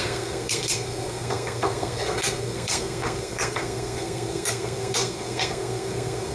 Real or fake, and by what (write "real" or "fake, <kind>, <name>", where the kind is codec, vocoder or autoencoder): fake, codec, SNAC